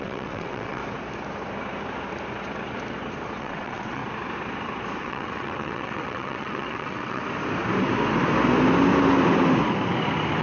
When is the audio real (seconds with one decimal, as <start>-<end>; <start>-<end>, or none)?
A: 0.8-3.4; 4.0-5.0; 7.2-10.4